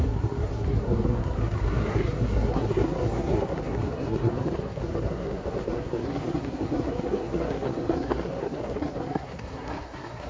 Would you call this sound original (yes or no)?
no